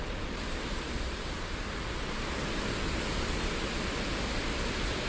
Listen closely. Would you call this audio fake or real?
real